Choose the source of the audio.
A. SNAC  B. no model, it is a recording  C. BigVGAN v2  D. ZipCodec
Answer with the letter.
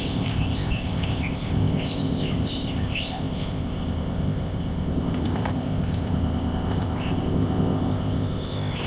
D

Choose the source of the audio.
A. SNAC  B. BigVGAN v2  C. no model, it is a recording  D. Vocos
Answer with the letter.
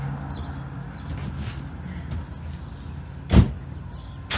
C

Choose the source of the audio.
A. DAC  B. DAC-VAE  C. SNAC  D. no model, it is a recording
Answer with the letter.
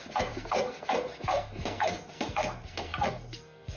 C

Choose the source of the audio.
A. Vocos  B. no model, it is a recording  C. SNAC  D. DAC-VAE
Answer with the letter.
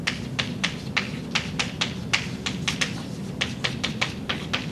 B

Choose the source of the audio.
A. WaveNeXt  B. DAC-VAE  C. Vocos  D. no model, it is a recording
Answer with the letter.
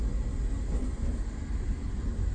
D